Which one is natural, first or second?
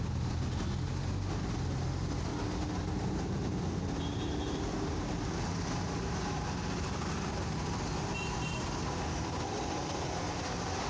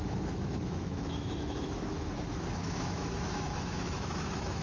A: first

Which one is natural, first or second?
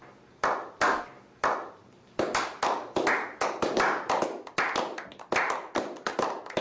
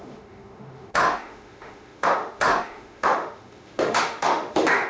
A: first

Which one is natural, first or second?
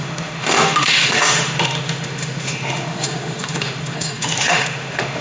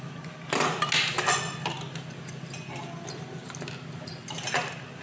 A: second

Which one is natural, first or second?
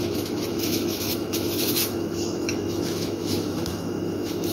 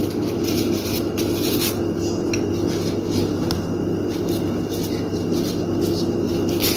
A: second